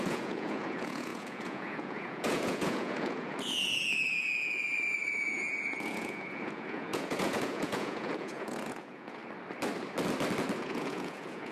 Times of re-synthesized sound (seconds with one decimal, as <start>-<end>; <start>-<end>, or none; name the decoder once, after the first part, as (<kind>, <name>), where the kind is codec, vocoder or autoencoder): 0.0-9.2 (vocoder, Vocos); 10.6-11.5